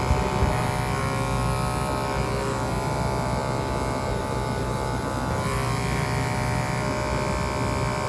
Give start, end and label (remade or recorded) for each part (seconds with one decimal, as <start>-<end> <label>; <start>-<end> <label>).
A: 0.0-8.1 recorded